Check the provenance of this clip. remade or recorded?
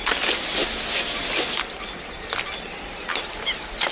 recorded